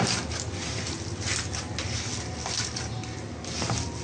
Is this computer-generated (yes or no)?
no